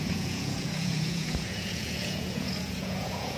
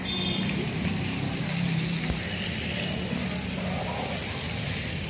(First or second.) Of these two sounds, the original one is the second